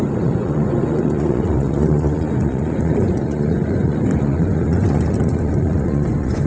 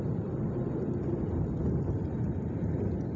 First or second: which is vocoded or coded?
first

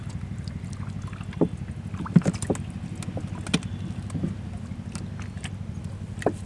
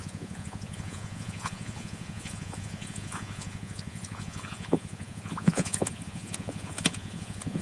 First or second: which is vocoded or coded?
second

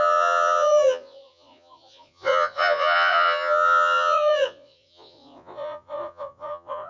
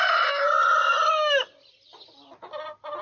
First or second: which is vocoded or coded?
first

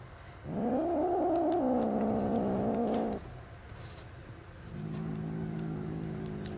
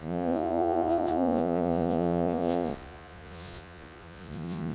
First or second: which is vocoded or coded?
second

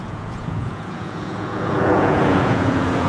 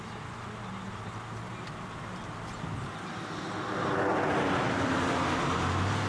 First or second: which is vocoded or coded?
first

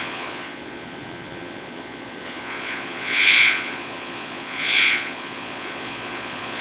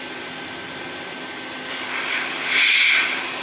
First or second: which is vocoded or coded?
first